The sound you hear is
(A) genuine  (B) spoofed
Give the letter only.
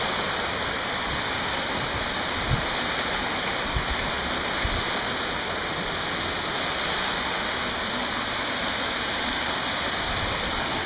A